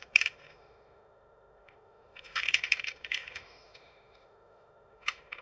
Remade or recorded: remade